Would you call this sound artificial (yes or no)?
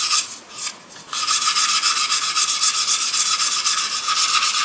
yes